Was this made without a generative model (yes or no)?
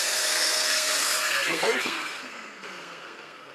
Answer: no